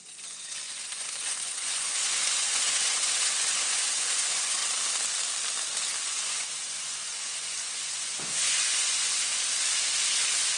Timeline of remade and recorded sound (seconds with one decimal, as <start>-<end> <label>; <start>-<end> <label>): 0.0-4.6 remade; 4.6-6.1 recorded; 6.1-9.3 remade; 9.3-10.6 recorded